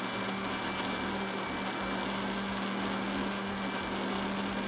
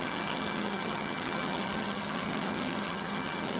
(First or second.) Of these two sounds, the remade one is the second